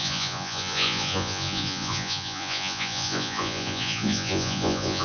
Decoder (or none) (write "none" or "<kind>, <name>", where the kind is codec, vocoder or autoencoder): vocoder, Vocos